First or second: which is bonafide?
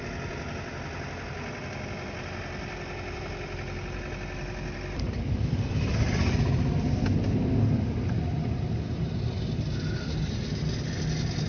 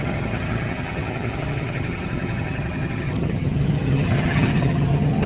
first